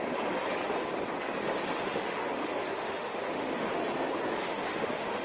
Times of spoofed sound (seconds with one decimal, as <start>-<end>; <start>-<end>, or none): 1.8-3.8; 4.3-5.2